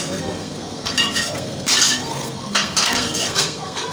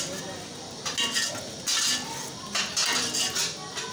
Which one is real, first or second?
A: second